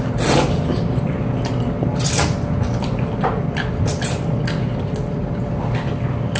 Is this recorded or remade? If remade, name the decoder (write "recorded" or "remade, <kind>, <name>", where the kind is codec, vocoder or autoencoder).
recorded